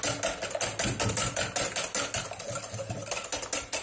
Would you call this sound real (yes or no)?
yes